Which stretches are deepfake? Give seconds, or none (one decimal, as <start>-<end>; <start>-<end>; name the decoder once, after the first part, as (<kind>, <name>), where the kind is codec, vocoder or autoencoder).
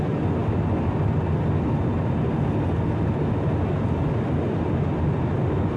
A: none